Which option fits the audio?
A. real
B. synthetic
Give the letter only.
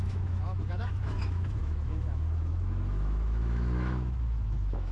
B